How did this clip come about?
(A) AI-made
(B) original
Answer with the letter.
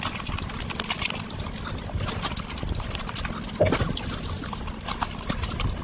B